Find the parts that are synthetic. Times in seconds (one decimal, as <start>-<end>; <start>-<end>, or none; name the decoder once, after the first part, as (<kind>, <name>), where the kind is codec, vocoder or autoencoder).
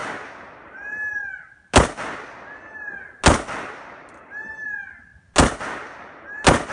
none